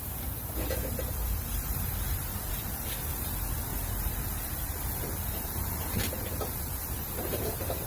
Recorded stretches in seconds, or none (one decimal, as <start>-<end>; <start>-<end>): none